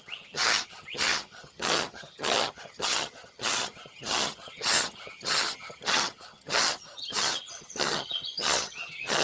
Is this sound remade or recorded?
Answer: remade